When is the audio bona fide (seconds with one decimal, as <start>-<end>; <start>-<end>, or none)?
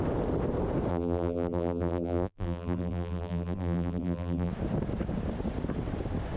0.0-0.9; 4.5-6.4